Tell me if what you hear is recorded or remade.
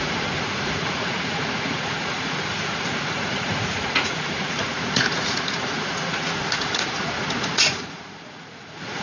remade